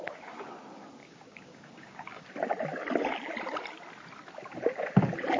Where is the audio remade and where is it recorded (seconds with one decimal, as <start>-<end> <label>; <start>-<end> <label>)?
0.0-1.0 recorded; 1.0-2.3 remade; 2.3-5.4 recorded